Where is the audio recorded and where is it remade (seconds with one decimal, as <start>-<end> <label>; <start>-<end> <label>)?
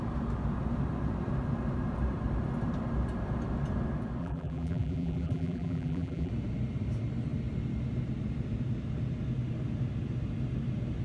0.0-4.2 recorded; 4.2-6.3 remade; 6.3-11.0 recorded